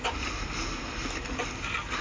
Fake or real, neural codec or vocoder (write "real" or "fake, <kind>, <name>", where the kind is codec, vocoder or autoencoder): real